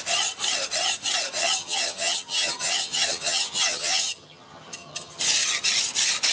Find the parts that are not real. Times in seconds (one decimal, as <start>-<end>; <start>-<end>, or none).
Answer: 1.4-5.2